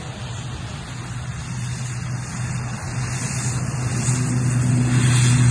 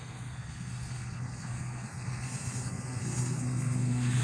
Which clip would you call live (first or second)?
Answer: first